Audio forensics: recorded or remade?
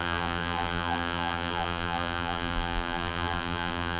remade